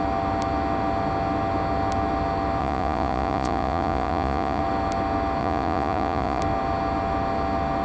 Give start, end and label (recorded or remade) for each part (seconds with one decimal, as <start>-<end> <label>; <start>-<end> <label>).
0.0-2.6 recorded; 2.6-4.6 remade; 4.6-5.4 recorded; 5.4-6.4 remade; 6.4-7.8 recorded